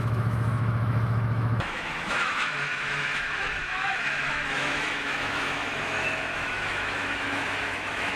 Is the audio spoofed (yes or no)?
yes